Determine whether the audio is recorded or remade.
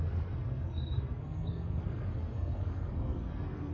remade